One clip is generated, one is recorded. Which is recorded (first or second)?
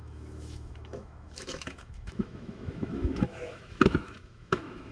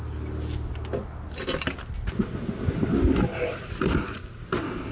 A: second